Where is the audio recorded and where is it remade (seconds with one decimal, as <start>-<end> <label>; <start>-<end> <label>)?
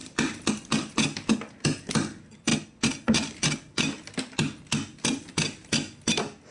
0.0-6.5 recorded